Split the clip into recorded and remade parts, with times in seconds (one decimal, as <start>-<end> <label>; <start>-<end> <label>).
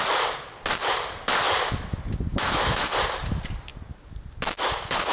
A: 0.0-2.3 recorded; 2.3-2.9 remade; 2.9-5.1 recorded